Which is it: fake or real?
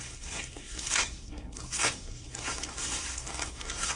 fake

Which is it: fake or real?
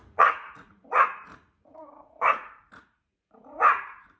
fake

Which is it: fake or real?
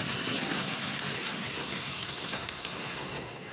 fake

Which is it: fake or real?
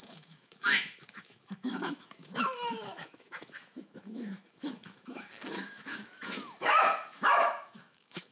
fake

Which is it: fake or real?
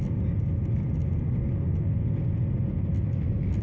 real